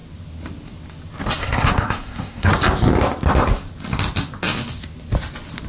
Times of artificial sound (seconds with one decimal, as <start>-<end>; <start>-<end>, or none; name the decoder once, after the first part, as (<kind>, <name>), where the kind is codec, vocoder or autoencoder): 1.4-2.5 (codec, SNAC)